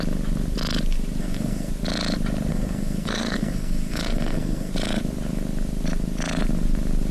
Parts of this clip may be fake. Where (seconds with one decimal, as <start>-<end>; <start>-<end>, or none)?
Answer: 1.2-1.7; 2.5-4.7

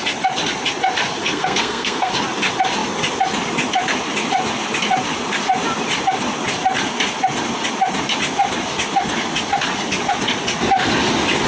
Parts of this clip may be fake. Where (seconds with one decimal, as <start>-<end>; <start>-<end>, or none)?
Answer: 1.2-2.1

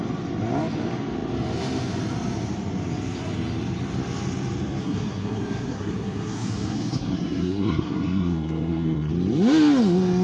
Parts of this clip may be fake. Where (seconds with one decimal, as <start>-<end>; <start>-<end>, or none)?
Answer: 4.8-9.1

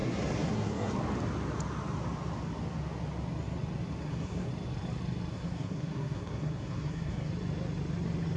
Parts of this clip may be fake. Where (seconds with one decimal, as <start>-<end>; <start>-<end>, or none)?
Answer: 0.0-0.9; 4.0-4.5; 5.3-7.3

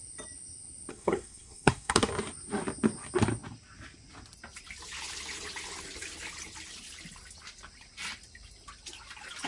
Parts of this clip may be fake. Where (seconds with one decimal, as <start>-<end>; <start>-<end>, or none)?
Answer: 0.9-2.1

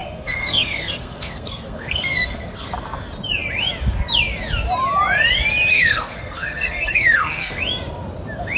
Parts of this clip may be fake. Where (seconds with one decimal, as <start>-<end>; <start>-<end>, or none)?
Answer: 0.0-2.7; 5.7-7.6

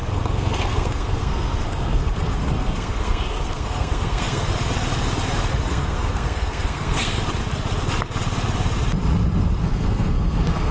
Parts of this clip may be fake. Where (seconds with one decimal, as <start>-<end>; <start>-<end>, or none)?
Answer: 0.0-4.5; 5.7-7.2; 9.6-10.7